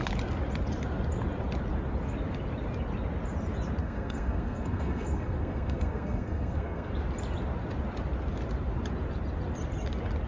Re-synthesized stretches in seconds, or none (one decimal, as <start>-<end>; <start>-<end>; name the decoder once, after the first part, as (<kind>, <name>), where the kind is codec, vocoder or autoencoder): 3.8-6.9 (codec, SNAC)